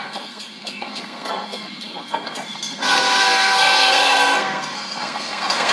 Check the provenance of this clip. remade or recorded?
remade